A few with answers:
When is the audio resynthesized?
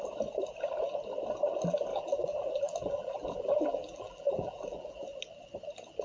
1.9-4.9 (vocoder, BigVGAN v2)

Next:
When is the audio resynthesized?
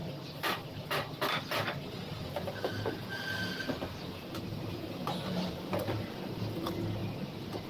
0.0-1.2 (vocoder, BigVGAN v2); 2.7-6.2; 7.0-7.7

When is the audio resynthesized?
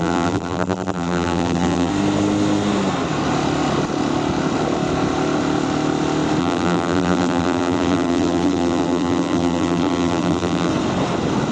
0.0-1.9 (vocoder, BigVGAN v2); 6.4-10.7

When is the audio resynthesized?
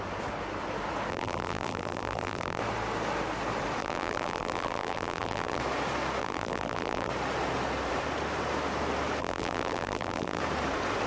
1.1-2.6 (vocoder, BigVGAN v2); 3.8-5.6; 6.2-7.1; 9.2-10.4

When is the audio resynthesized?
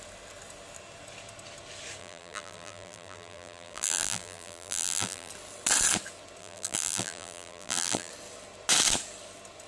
2.0-5.3 (vocoder, BigVGAN v2); 6.4-8.1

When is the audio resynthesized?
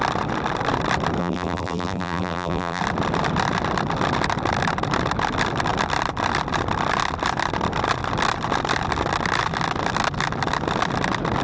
1.2-2.8 (vocoder, BigVGAN v2)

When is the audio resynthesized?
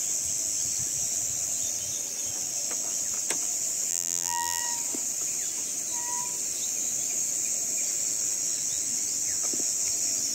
3.9-4.6 (vocoder, BigVGAN v2)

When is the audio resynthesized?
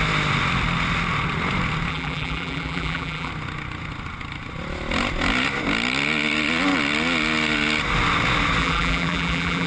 1.9-3.3 (vocoder, BigVGAN v2); 8.6-9.7